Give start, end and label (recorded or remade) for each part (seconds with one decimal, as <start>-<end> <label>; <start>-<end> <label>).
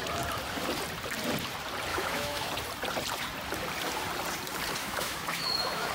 0.0-1.9 recorded; 1.9-2.5 remade; 2.5-4.8 recorded; 4.8-5.9 remade